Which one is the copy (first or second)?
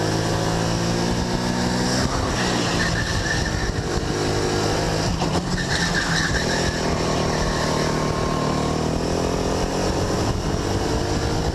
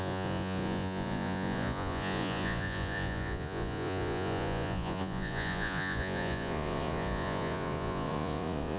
second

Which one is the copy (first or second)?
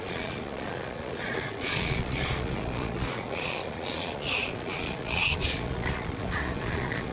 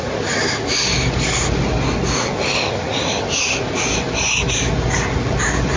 first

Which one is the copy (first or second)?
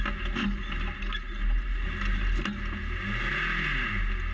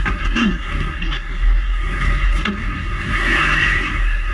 second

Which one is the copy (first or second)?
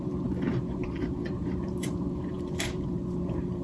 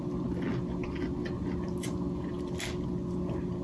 first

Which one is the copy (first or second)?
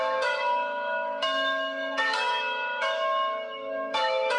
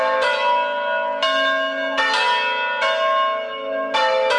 first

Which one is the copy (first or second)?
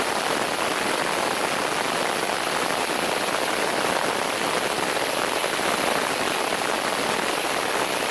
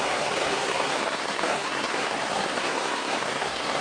second